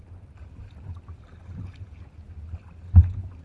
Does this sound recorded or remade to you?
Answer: recorded